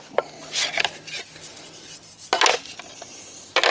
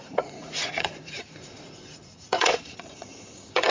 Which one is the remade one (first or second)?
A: second